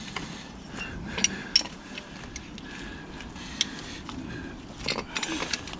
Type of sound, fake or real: real